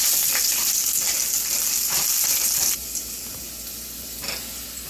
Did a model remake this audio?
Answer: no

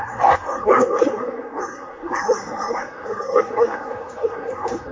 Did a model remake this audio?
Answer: yes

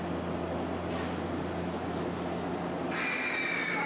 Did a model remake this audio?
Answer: no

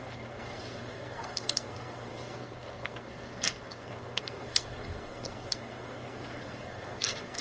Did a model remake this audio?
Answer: yes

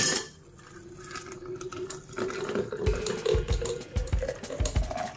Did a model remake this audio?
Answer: no